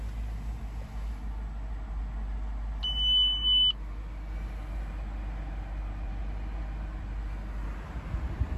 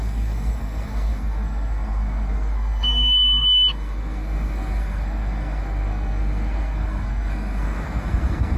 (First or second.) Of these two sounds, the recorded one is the first